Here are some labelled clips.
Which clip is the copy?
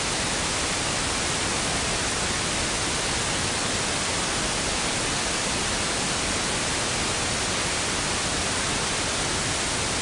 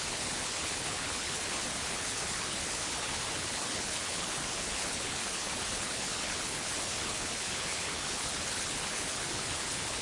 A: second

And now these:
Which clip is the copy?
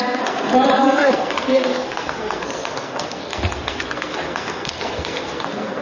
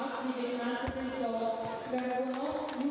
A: first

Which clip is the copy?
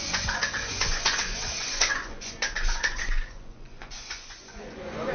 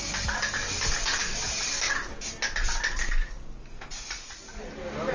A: first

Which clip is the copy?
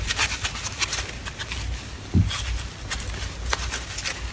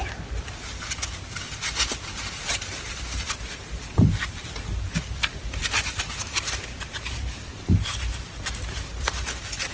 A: second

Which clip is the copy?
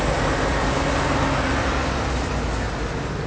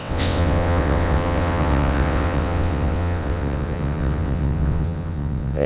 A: second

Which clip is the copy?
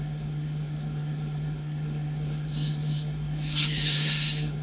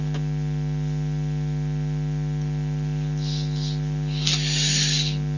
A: first